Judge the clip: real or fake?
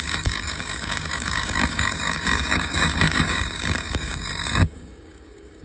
fake